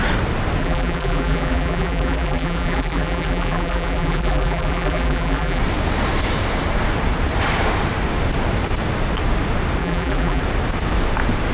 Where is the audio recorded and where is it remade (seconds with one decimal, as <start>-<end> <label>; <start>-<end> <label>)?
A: 0.0-0.6 recorded; 0.6-5.6 remade; 5.6-9.8 recorded; 9.8-10.4 remade; 10.4-11.5 recorded